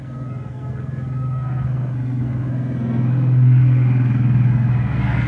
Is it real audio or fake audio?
fake